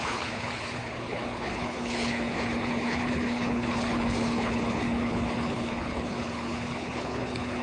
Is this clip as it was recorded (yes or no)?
no